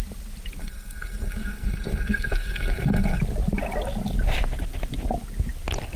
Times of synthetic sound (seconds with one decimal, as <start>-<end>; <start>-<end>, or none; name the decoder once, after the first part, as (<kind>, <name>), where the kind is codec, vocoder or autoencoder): 0.6-3.2 (codec, SNAC)